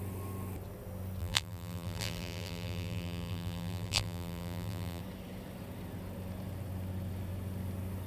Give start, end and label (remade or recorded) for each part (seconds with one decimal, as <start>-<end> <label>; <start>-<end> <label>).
0.0-1.2 recorded; 1.2-5.0 remade; 5.0-8.1 recorded